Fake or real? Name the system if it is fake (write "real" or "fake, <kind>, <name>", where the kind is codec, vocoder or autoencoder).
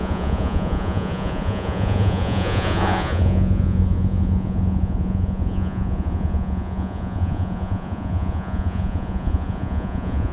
fake, vocoder, Vocos